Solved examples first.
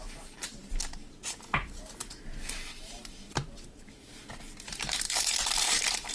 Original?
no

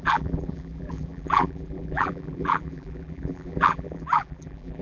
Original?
no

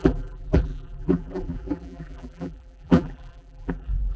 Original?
no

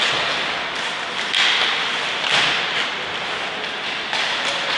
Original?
yes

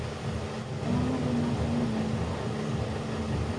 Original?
yes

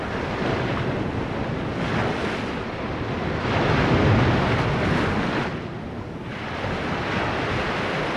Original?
yes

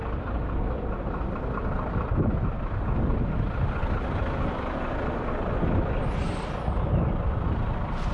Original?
no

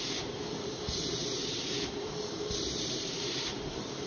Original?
no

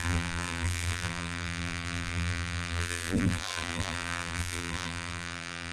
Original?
no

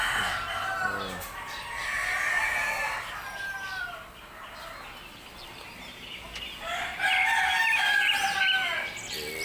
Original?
yes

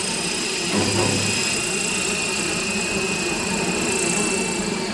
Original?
yes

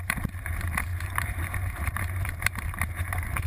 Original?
no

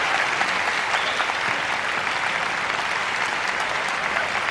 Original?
yes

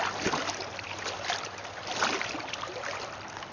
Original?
no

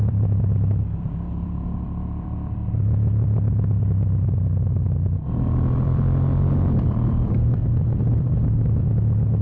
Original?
no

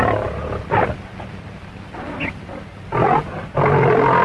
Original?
yes